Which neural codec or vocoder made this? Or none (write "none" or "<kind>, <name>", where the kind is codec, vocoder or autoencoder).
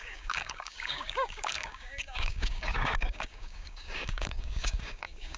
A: codec, DAC